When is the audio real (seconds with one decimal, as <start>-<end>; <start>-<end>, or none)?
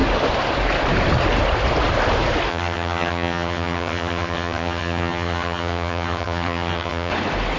0.0-2.5; 7.1-7.6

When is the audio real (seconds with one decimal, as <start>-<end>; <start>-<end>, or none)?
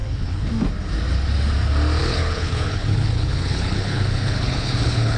0.5-2.0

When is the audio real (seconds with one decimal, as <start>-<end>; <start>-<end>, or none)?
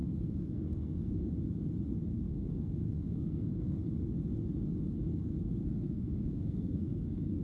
1.3-2.1; 3.9-5.1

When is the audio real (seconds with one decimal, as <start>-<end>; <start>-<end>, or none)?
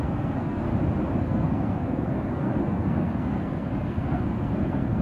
0.7-1.2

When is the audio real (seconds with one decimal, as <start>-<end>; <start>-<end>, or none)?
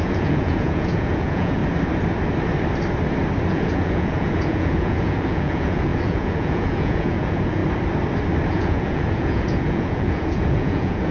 1.6-3.5; 7.6-8.5